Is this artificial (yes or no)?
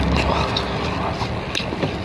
no